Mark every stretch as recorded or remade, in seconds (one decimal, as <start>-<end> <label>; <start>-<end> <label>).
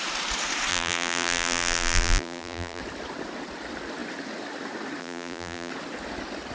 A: 0.0-0.7 recorded; 0.7-2.8 remade; 2.8-5.0 recorded; 5.0-5.7 remade; 5.7-6.5 recorded